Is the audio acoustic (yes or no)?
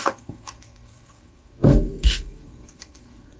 no